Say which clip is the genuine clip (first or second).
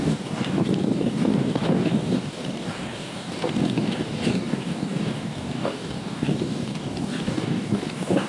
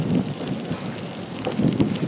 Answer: second